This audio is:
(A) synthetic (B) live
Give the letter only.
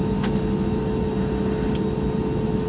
B